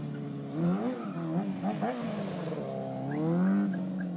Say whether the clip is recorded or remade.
recorded